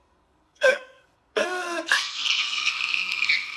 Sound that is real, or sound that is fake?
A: fake